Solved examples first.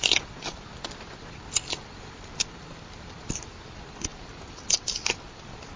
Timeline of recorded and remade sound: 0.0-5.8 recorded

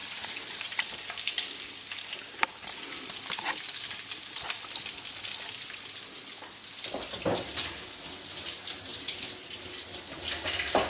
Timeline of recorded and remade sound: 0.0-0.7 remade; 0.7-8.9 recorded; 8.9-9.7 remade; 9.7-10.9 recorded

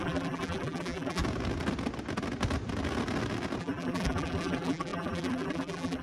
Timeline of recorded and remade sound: 0.0-1.2 remade; 1.2-3.6 recorded; 3.6-6.0 remade